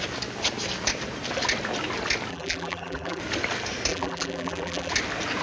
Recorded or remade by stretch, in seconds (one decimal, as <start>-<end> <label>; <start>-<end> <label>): 0.0-2.3 recorded; 2.3-3.2 remade; 3.2-3.9 recorded; 3.9-4.9 remade; 4.9-5.4 recorded